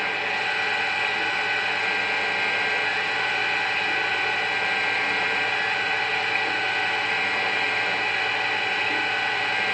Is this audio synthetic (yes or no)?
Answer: no